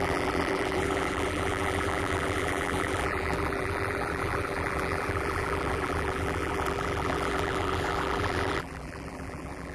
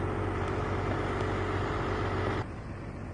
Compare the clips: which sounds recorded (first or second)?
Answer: second